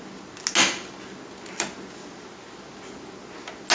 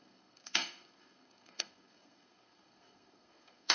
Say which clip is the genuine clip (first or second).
first